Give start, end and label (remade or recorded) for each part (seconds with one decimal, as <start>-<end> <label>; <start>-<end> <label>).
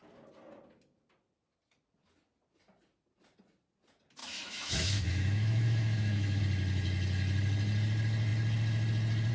0.0-4.2 recorded; 4.2-6.4 remade; 6.4-9.3 recorded